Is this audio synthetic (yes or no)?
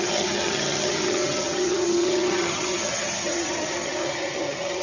yes